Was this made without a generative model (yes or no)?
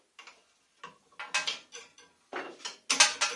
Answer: yes